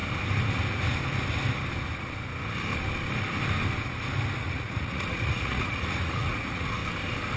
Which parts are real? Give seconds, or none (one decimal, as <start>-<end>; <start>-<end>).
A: 0.0-4.4; 6.8-7.4